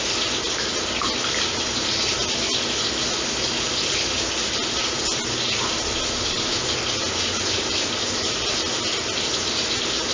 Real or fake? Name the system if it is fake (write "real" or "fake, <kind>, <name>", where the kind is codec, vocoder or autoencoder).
real